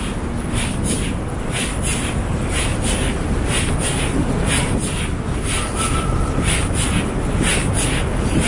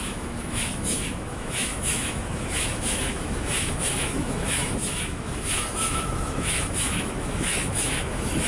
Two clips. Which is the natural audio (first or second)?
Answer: first